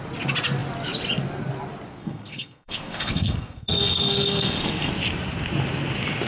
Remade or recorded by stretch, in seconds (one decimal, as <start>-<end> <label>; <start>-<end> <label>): 0.0-2.0 recorded; 2.0-4.9 remade; 4.9-6.3 recorded